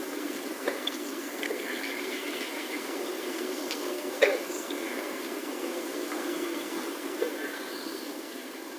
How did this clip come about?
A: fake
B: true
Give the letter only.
A